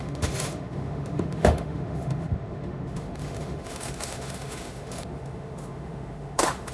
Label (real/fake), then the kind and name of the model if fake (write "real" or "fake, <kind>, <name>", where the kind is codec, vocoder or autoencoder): fake, autoencoder, DAC-VAE